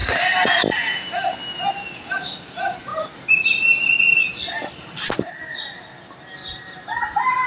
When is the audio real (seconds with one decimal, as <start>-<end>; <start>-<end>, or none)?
0.0-7.5